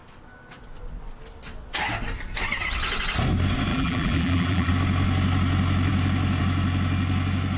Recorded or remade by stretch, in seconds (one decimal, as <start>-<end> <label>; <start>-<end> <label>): 0.0-3.7 recorded; 3.7-4.7 remade; 4.7-7.6 recorded